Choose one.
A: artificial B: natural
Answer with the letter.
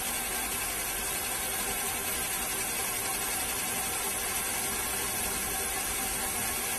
B